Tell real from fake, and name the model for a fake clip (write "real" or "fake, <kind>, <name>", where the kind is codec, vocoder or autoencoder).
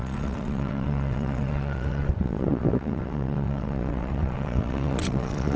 fake, vocoder, WaveNeXt